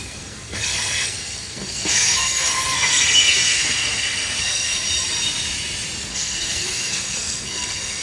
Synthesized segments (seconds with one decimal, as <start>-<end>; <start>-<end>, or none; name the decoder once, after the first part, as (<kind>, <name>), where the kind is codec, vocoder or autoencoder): 0.0-4.7 (codec, SNAC); 6.1-8.0